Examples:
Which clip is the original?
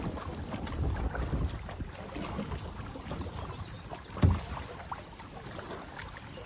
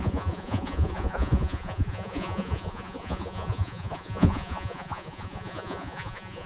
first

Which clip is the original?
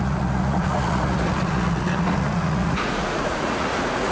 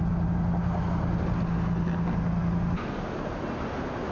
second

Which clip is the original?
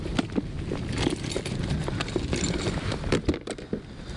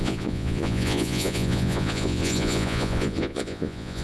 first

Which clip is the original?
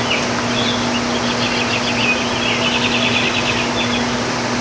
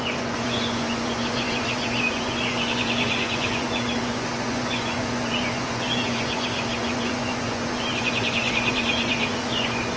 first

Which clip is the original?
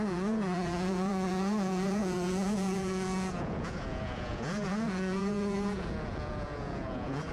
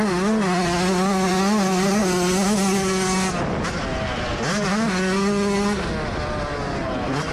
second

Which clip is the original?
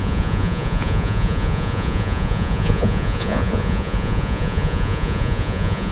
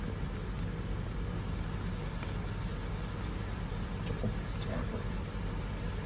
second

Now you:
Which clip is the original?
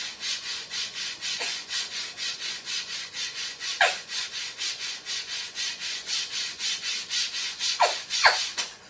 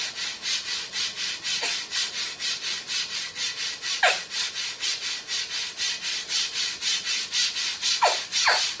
second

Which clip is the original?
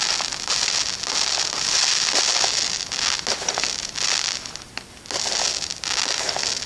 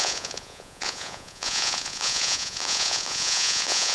first